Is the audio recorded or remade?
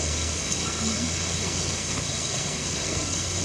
remade